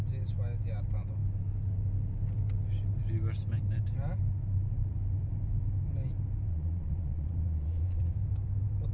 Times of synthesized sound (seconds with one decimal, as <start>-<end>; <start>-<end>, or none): 6.5-8.1